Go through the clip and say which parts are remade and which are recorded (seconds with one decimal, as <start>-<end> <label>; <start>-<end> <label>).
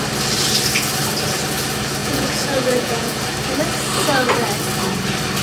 0.0-2.0 recorded; 2.0-3.2 remade; 3.2-5.4 recorded